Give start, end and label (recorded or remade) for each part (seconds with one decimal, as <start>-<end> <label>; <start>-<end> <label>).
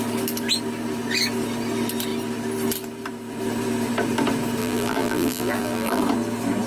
0.0-4.6 recorded; 4.6-6.0 remade; 6.0-6.7 recorded